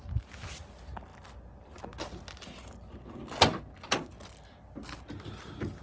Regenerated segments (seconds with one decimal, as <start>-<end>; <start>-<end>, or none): none